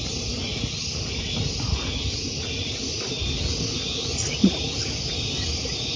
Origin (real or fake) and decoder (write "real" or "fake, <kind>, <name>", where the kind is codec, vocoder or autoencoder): real